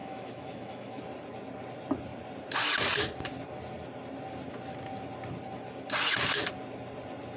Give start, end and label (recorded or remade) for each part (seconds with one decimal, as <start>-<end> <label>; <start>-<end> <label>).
0.0-1.0 remade; 1.0-7.4 recorded